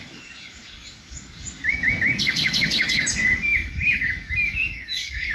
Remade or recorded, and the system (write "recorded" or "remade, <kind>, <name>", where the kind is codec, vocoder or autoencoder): remade, codec, DAC